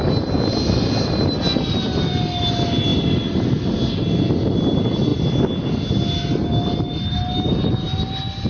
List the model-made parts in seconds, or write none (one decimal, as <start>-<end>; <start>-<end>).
2.9-3.5